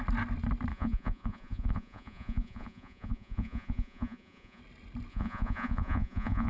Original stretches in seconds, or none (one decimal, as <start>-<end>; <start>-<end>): 0.0-0.7; 4.6-5.1